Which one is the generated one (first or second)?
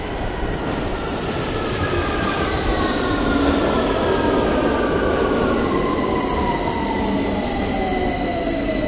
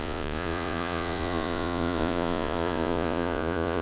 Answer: second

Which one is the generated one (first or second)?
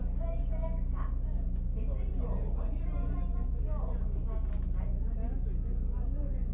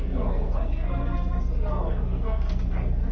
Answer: second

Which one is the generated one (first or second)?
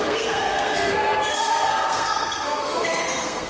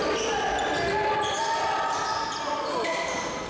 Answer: first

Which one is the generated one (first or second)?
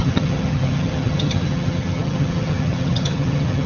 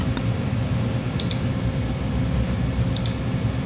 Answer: first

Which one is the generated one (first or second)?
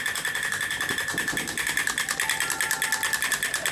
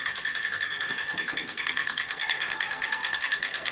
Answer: second